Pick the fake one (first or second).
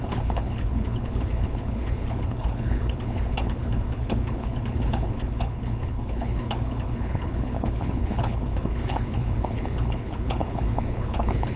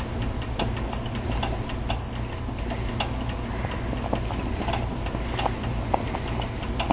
first